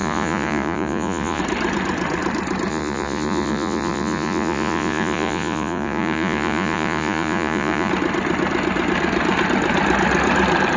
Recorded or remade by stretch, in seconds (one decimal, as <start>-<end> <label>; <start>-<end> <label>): 0.0-1.4 remade; 1.4-2.7 recorded; 2.7-7.9 remade; 7.9-10.8 recorded